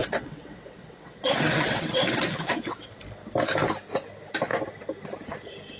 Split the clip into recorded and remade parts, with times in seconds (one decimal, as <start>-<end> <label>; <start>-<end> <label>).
0.0-3.0 remade; 3.0-5.8 recorded